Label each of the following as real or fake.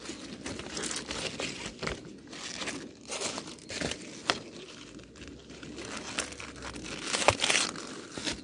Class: real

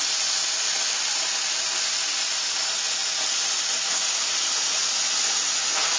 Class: real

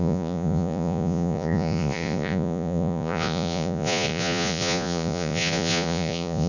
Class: fake